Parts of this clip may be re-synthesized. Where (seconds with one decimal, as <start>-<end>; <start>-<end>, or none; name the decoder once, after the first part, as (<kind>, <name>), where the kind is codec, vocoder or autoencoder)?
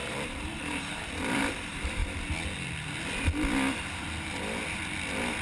0.0-2.0 (vocoder, BigVGAN v2)